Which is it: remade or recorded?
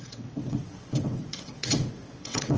remade